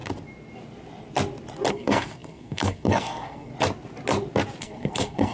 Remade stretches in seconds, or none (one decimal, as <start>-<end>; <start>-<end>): 1.7-3.5; 4.6-5.3